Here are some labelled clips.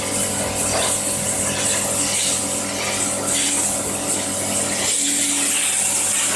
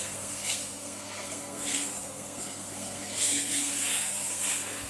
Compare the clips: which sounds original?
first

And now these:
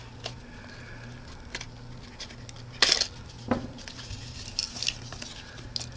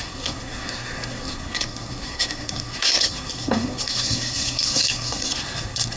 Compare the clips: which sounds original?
first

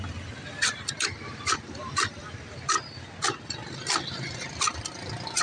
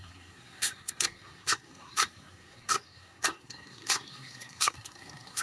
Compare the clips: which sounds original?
first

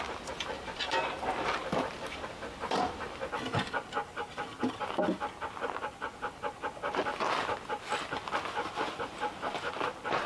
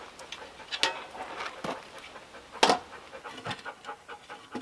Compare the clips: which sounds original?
second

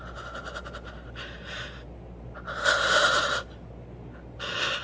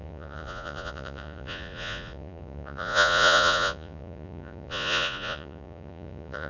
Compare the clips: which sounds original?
first